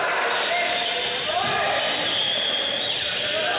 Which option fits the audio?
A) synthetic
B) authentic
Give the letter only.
A